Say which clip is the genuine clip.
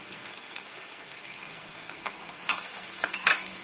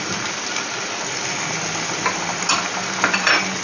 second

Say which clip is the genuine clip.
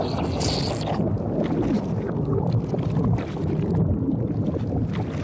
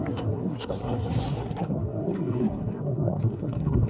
first